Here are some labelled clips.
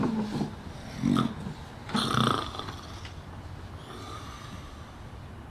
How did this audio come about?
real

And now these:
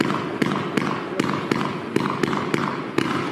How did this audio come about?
real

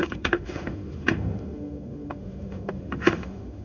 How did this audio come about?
fake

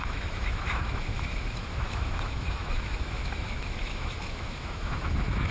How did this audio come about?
fake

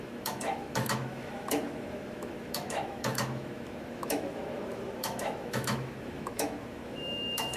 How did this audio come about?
fake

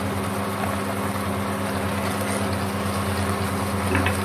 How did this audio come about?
real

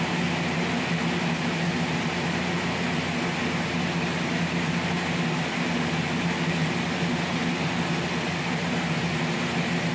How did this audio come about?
real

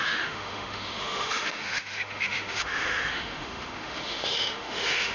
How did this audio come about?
fake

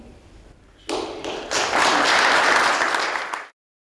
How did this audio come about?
real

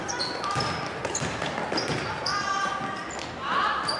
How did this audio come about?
real